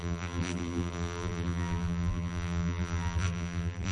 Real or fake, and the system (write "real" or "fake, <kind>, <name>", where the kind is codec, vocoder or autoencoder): fake, vocoder, BigVGAN v2